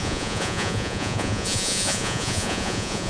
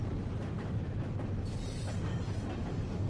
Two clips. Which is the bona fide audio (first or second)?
second